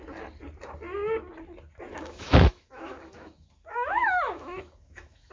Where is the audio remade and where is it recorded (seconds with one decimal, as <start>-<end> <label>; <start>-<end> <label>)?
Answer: 0.0-1.9 recorded; 1.9-5.3 remade